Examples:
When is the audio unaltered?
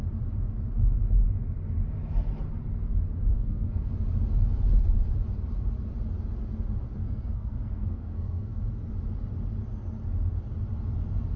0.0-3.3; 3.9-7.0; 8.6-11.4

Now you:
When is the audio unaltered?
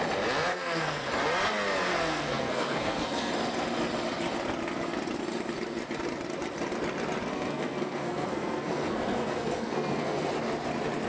0.0-0.5; 1.1-1.9; 3.3-7.3; 10.3-11.1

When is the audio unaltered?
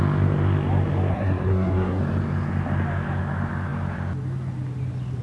0.0-1.1; 2.0-5.2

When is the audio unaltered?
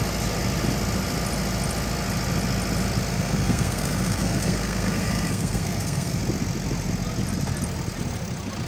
0.0-3.1; 6.2-8.7